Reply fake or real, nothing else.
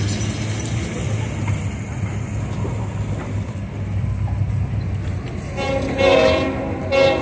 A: real